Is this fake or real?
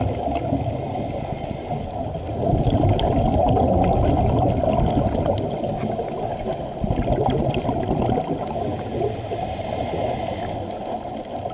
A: real